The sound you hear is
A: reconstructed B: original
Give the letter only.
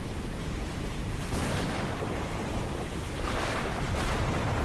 B